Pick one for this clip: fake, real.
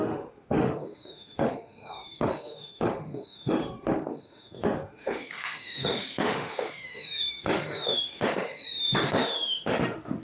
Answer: fake